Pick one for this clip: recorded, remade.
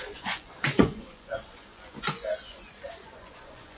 remade